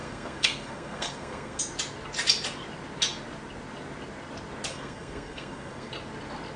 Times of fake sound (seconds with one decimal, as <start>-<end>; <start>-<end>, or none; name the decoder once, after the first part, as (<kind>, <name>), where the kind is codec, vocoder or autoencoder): 0.0-1.6 (codec, SNAC); 4.7-5.9